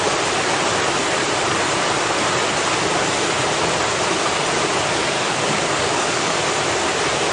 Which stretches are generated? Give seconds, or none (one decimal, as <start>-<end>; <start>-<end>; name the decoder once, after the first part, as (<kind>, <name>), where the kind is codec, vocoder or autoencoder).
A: 5.0-6.4 (codec, DAC)